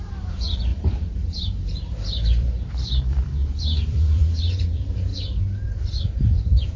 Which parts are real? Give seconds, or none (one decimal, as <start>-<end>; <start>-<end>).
5.1-6.0